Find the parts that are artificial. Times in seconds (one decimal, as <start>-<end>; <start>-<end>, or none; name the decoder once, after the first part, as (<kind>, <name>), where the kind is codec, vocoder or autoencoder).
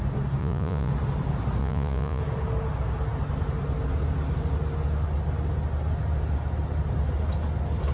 0.4-0.9 (vocoder, Vocos); 1.6-2.2